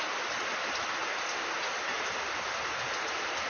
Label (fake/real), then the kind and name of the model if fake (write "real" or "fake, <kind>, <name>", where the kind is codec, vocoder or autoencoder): real